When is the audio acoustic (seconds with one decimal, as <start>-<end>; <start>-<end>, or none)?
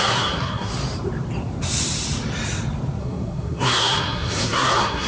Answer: 0.7-3.0